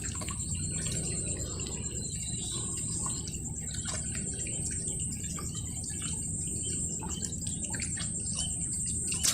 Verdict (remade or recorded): recorded